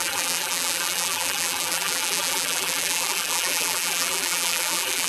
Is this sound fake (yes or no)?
yes